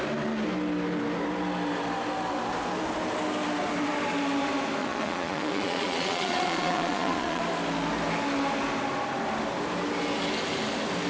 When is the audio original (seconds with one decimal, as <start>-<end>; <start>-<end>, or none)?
0.0-4.8; 7.4-11.1